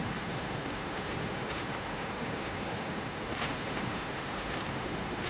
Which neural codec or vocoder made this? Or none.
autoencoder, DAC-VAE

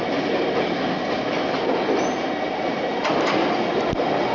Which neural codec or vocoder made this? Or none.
none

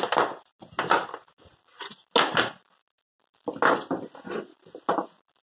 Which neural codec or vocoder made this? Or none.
none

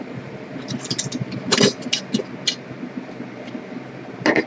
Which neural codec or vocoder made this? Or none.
none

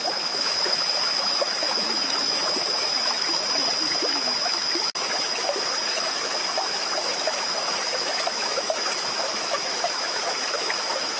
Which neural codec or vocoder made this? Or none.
autoencoder, DAC-VAE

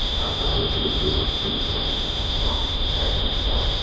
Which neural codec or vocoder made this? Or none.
autoencoder, DAC-VAE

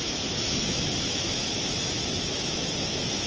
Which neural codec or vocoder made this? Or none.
autoencoder, DAC-VAE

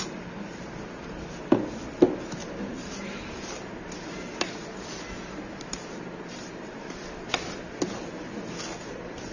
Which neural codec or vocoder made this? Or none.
none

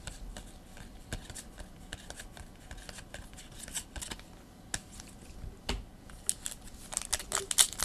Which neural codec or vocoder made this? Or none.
none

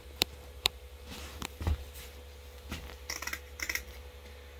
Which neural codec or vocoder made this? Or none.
none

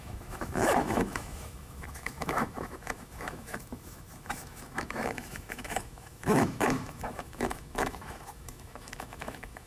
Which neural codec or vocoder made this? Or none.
autoencoder, DAC-VAE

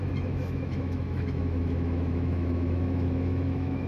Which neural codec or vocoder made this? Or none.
autoencoder, DAC-VAE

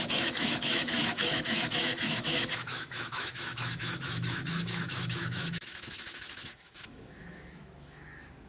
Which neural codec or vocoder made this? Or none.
autoencoder, DAC-VAE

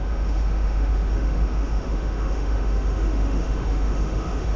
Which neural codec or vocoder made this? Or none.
autoencoder, DAC-VAE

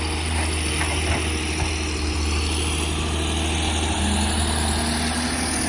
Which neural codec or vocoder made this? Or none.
none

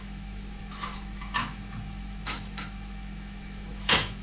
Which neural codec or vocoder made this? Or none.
autoencoder, DAC-VAE